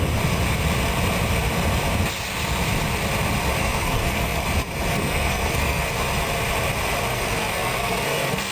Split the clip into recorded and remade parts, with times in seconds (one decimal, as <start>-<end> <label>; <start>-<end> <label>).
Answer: 0.0-3.6 recorded; 3.6-4.4 remade; 4.4-4.9 recorded; 4.9-5.9 remade; 5.9-7.1 recorded; 7.1-8.5 remade